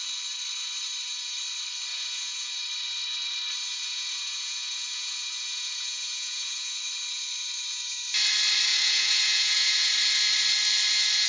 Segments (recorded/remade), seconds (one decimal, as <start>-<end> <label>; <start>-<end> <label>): 0.0-1.9 recorded; 1.9-2.5 remade; 2.5-3.7 recorded; 3.7-6.8 remade; 6.8-8.7 recorded; 8.7-9.9 remade; 9.9-11.3 recorded